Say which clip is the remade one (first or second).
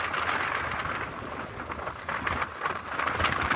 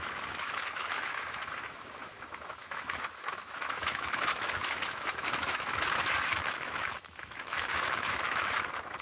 second